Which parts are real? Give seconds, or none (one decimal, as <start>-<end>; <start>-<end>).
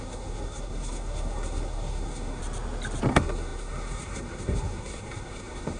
2.4-3.1